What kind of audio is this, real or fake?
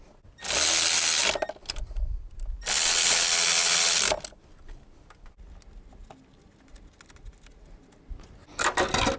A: real